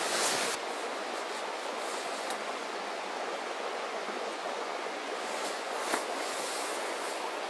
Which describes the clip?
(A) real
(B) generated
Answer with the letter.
B